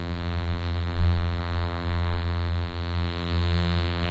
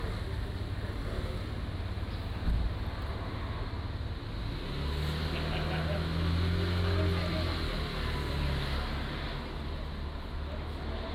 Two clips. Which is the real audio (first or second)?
second